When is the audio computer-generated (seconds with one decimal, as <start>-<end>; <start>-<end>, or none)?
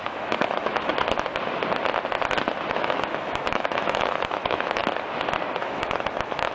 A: 0.0-0.9; 2.7-4.8; 5.6-6.5